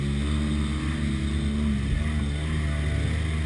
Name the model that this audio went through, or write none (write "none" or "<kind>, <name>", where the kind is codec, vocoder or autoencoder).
none